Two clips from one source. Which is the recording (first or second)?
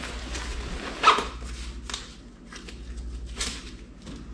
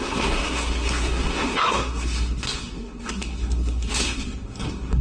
first